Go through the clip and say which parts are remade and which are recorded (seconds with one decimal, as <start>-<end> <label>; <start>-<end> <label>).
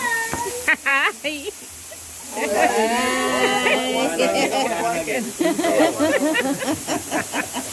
0.0-7.7 recorded